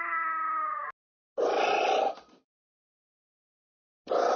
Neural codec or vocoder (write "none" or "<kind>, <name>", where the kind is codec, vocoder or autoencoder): none